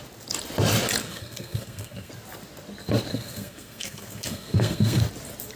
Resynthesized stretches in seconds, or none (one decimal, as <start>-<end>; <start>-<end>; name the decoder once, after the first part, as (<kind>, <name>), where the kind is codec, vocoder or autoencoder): 1.0-2.1 (codec, SNAC); 3.1-5.0